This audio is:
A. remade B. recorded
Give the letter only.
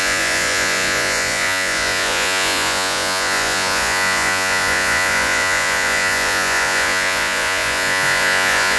A